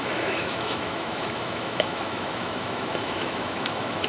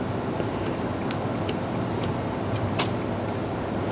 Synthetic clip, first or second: first